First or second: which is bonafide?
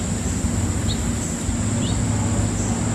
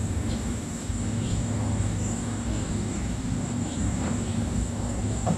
first